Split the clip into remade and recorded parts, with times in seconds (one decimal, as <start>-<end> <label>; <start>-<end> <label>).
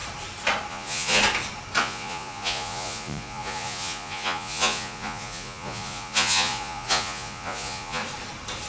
0.0-0.7 recorded; 0.7-1.2 remade; 1.2-1.8 recorded; 1.8-8.0 remade; 8.0-8.7 recorded